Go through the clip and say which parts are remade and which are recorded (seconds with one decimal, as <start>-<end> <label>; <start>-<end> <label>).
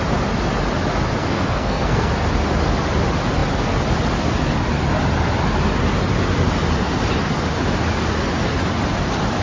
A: 0.0-1.2 recorded; 1.2-2.1 remade; 2.1-9.4 recorded